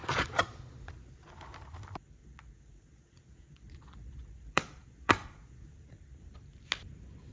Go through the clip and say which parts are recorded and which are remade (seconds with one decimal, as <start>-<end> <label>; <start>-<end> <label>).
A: 0.0-1.3 remade; 1.3-2.2 recorded; 2.2-5.7 remade; 5.7-7.3 recorded